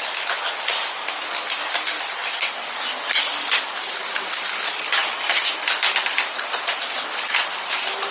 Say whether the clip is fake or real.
real